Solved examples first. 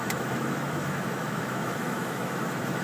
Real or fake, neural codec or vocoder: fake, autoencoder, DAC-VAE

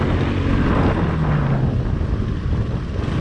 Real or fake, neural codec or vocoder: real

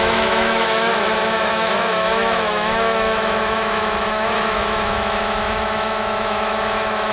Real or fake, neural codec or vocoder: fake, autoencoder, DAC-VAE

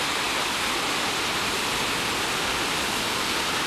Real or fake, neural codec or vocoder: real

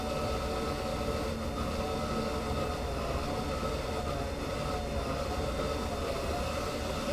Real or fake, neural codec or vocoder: real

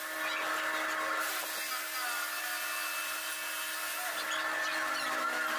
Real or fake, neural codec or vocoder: real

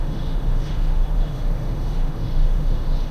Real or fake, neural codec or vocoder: fake, autoencoder, DAC-VAE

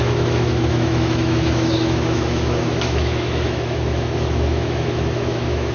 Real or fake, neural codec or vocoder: fake, autoencoder, DAC-VAE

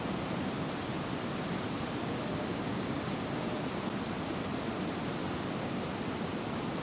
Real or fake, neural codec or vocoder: real